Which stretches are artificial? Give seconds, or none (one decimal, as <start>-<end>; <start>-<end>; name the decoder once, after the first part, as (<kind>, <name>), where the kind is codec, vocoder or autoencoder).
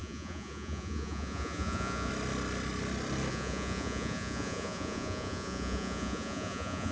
0.0-2.1 (vocoder, Vocos); 3.3-6.9